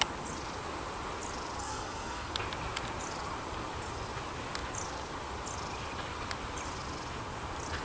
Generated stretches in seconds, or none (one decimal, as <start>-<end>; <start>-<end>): 1.6-2.3